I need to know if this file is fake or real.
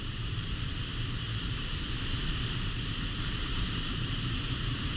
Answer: fake